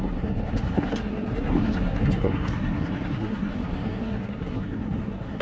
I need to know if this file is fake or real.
fake